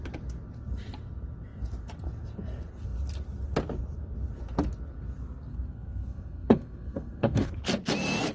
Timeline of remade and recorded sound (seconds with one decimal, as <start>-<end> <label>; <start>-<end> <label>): 0.0-5.5 recorded; 5.5-7.5 remade; 7.5-8.3 recorded